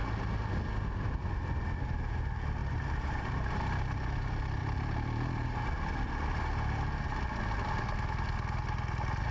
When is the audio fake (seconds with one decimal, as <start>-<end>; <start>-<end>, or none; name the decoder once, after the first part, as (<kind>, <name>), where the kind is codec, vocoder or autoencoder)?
2.6-3.6 (vocoder, BigVGAN v2); 4.6-5.6